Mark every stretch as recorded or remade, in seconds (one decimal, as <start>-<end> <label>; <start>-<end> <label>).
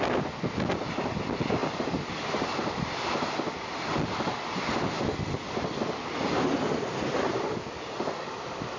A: 0.0-8.8 recorded